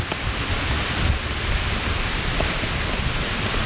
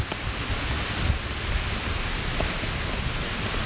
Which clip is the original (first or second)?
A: second